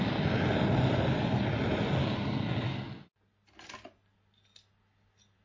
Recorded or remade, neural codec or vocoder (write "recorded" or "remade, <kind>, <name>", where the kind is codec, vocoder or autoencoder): recorded